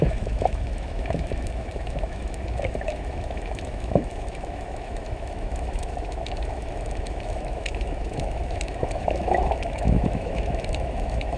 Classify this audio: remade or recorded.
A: remade